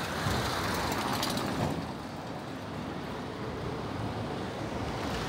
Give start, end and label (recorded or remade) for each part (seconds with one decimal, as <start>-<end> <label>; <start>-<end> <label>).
0.0-5.3 recorded